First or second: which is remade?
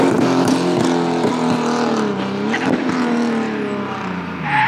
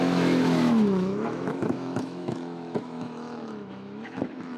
second